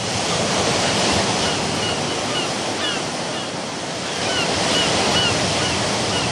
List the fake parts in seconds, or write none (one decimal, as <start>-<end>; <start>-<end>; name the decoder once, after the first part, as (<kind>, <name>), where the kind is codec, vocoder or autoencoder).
0.0-1.4 (vocoder, BigVGAN v2); 3.3-4.3